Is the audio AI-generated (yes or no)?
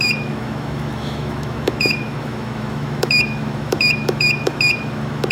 yes